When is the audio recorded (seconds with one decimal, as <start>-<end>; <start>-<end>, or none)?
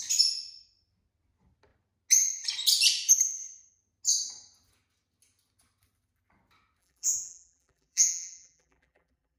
0.0-6.8